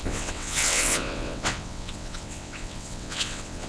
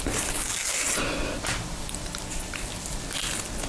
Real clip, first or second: second